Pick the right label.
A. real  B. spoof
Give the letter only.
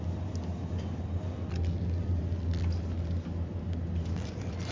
A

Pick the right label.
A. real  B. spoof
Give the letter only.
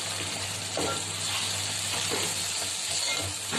A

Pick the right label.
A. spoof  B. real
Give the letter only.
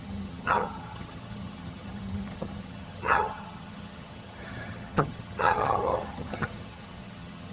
A